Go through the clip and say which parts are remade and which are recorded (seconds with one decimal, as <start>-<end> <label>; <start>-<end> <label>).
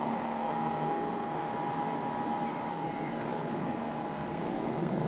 0.0-1.5 remade; 1.5-2.7 recorded; 2.7-5.1 remade